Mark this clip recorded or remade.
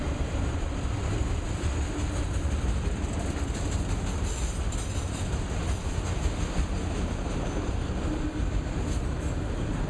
recorded